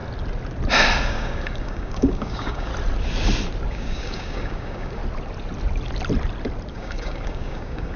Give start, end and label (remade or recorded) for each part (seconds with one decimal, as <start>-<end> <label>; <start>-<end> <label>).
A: 0.0-1.0 recorded; 1.0-2.7 remade; 2.7-3.7 recorded; 3.7-5.0 remade; 5.0-6.7 recorded; 6.7-8.0 remade